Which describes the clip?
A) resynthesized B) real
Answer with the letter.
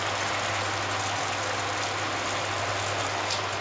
B